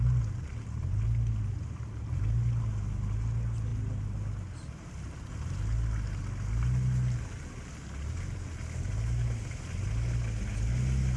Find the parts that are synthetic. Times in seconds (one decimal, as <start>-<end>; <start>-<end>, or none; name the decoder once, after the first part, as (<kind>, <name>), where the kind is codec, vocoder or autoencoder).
none